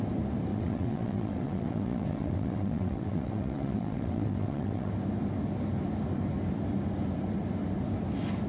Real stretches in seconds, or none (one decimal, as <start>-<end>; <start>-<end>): 0.0-0.5; 4.9-8.5